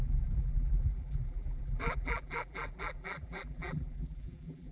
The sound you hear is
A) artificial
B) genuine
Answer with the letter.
A